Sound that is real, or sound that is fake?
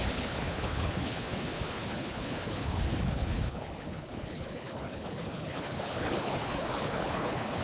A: fake